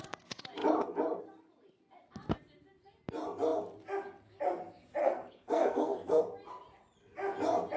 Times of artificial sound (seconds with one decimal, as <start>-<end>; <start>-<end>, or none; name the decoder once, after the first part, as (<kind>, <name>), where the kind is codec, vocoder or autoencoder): 5.0-6.2 (codec, SNAC)